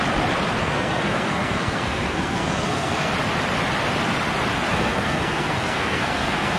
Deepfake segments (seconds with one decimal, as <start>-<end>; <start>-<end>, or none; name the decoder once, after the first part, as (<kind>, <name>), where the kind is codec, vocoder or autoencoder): 0.6-3.1 (codec, SNAC); 4.7-6.6